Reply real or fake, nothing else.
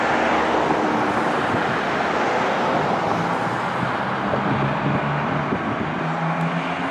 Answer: real